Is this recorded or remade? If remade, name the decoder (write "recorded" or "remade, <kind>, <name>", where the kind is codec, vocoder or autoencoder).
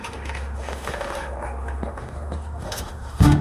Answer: remade, autoencoder, DAC-VAE